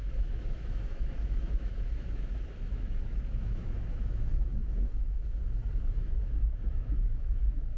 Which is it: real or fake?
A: fake